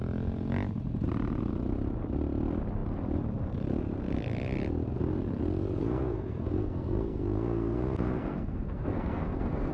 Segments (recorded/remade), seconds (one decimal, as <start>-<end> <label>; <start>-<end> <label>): 0.0-5.8 recorded; 5.8-9.7 remade